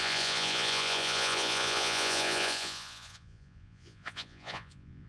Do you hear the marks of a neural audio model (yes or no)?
yes